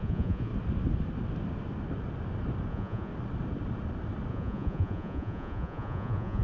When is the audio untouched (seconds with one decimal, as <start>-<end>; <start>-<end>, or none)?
0.5-2.7; 3.1-4.3